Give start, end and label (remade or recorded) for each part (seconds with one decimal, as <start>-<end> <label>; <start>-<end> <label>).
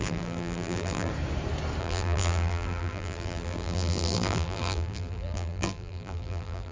0.0-1.1 remade; 1.1-1.8 recorded; 1.8-6.7 remade